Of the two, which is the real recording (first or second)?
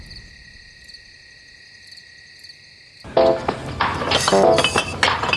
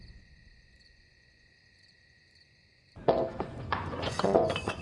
first